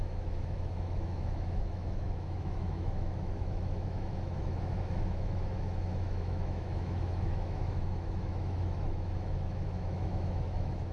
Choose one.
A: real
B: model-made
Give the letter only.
B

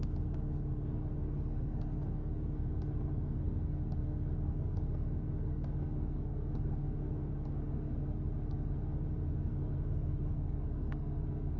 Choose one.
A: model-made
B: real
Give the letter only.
A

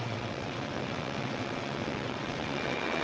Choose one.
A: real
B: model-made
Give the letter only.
B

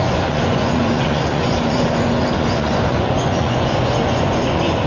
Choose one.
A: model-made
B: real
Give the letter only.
A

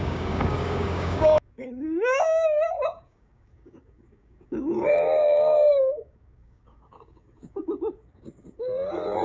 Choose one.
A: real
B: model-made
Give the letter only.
B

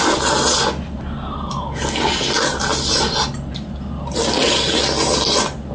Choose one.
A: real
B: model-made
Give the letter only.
A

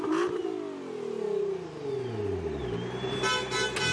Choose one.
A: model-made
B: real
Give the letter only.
B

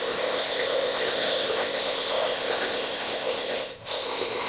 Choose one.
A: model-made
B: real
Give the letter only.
A